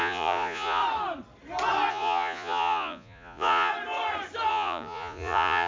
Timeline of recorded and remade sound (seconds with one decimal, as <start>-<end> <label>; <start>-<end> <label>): 0.0-0.8 remade; 0.8-1.9 recorded; 1.9-3.7 remade; 3.7-4.5 recorded; 4.5-5.7 remade